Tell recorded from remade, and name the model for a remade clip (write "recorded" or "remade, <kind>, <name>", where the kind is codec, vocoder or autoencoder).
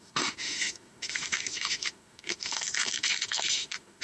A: remade, autoencoder, DAC-VAE